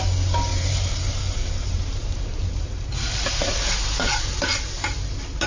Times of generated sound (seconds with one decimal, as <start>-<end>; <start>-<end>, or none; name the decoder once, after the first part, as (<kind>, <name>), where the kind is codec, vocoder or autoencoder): 0.5-3.8 (vocoder, BigVGAN v2)